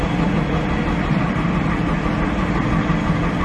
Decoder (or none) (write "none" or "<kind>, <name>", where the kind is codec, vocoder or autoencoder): none